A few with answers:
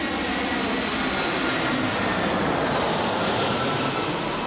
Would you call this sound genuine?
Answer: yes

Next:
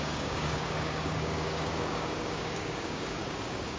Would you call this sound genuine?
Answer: no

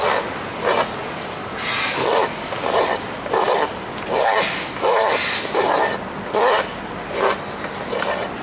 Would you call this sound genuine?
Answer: yes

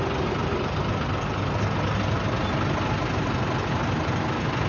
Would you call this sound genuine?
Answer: yes